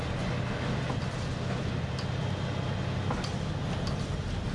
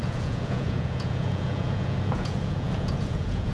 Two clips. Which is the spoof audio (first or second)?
second